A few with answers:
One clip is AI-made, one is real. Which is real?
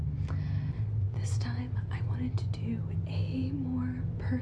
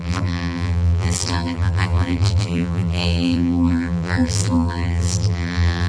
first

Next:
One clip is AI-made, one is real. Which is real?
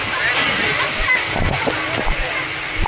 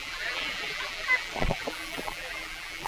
first